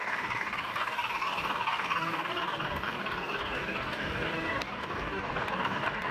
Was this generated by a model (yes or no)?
yes